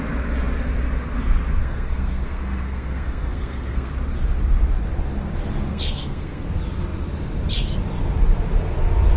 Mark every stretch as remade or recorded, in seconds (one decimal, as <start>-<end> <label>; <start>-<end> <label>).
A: 0.0-1.6 recorded; 1.6-3.9 remade; 3.9-5.7 recorded; 5.7-6.4 remade; 6.4-9.2 recorded